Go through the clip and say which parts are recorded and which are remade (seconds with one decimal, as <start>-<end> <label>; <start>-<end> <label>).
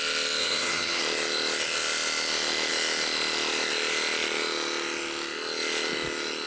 0.0-0.4 recorded; 0.4-1.0 remade; 1.0-6.5 recorded